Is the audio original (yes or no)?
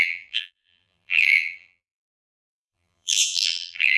no